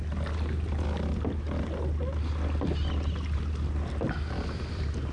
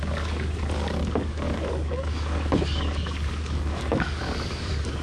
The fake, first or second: second